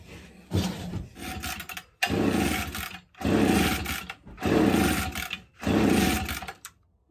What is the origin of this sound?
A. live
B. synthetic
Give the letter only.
A